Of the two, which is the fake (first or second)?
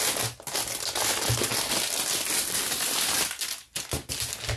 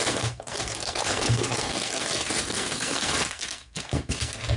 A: second